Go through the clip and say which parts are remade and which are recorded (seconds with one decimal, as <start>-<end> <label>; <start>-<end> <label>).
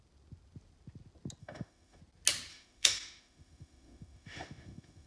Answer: 0.0-1.4 recorded; 1.4-2.0 remade; 2.0-2.5 recorded; 2.5-5.1 remade